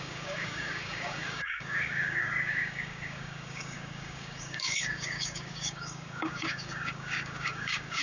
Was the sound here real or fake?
fake